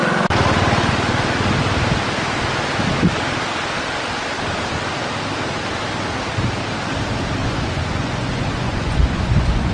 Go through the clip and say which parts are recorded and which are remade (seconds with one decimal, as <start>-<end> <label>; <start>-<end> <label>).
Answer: 0.0-7.4 recorded; 7.4-9.7 remade